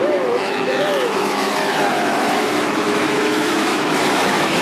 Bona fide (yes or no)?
no